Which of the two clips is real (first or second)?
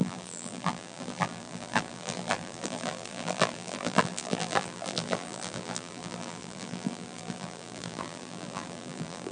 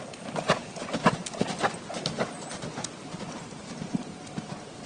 second